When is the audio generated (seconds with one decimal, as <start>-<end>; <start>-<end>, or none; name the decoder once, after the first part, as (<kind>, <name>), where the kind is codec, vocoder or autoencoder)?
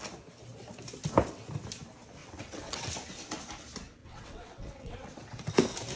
2.2-2.9 (vocoder, WaveNeXt); 4.0-5.4